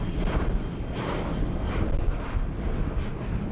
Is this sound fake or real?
real